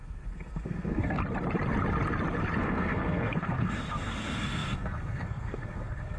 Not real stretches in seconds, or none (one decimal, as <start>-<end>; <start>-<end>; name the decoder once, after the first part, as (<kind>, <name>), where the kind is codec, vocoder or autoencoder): 0.0-1.2 (codec, SNAC); 2.6-6.2